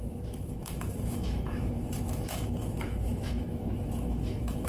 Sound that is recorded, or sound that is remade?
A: remade